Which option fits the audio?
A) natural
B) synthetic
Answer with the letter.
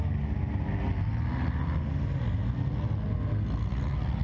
A